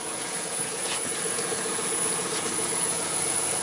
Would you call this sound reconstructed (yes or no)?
yes